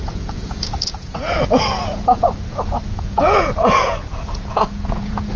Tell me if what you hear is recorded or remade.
remade